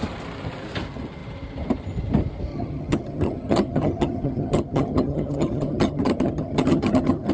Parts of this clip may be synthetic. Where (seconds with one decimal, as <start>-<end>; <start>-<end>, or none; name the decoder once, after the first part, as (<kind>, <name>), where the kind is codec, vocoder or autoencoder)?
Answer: 2.5-7.3 (vocoder, HiFi-GAN)